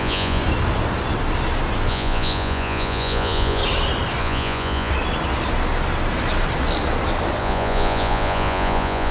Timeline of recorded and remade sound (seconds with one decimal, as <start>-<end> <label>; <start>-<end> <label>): 0.0-0.4 remade; 0.4-1.9 recorded; 1.9-3.6 remade; 3.6-4.2 recorded; 4.2-4.9 remade; 4.9-7.4 recorded; 7.4-9.1 remade